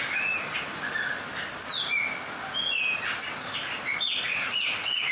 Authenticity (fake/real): real